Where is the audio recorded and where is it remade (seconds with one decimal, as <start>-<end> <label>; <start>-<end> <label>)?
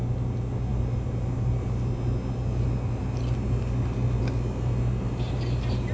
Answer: 0.0-5.9 recorded